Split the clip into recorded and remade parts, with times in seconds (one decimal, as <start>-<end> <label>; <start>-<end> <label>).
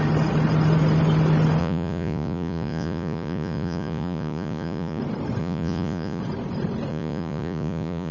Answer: 0.0-1.6 recorded; 1.6-5.0 remade; 5.0-5.4 recorded; 5.4-6.2 remade; 6.2-6.9 recorded; 6.9-8.1 remade